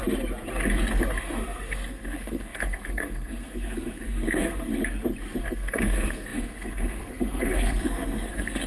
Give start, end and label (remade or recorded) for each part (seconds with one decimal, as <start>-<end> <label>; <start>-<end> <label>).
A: 0.0-1.2 recorded; 1.2-4.7 remade; 4.7-5.4 recorded; 5.4-8.7 remade